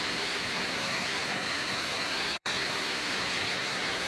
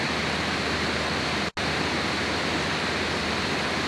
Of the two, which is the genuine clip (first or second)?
second